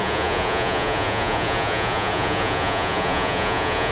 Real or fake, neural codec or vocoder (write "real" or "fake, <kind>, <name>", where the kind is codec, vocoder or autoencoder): fake, vocoder, Vocos